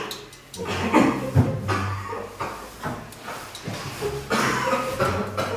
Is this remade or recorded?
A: recorded